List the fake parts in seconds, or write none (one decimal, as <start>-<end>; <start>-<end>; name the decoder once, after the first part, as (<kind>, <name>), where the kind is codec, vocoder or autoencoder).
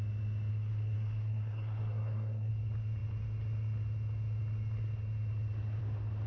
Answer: 0.5-2.5 (codec, SNAC)